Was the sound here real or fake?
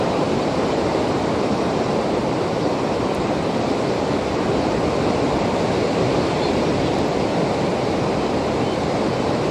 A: fake